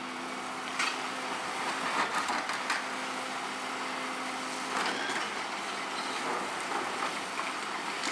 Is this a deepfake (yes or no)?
no